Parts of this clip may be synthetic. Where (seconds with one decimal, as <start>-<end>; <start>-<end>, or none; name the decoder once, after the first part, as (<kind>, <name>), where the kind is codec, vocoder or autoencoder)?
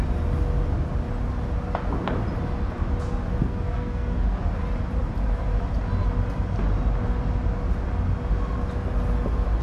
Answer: 3.4-4.4 (codec, SNAC)